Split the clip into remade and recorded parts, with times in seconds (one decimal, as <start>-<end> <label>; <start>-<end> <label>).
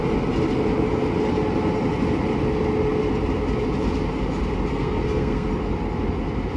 0.0-4.7 recorded; 4.7-5.5 remade; 5.5-6.6 recorded